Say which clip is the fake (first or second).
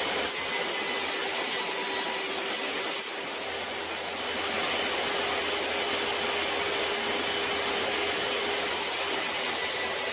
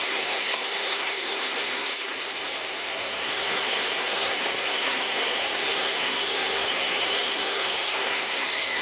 second